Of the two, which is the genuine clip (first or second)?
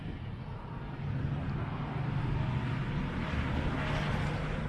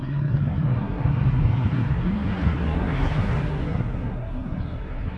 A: first